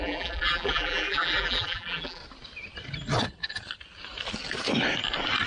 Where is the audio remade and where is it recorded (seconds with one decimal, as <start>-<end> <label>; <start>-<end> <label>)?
0.0-2.2 remade; 2.2-5.5 recorded